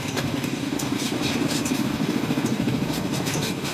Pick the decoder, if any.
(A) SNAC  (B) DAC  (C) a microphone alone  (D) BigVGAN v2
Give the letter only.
B